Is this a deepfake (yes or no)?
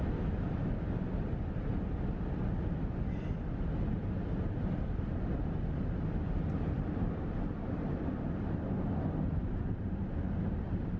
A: no